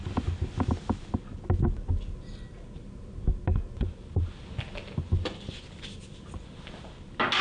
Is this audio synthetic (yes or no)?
no